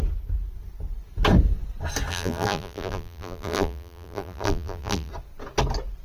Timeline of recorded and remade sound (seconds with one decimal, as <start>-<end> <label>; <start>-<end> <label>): 0.0-2.1 recorded; 2.1-5.1 remade; 5.1-6.0 recorded